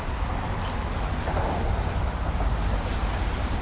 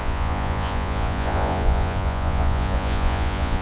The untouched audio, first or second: first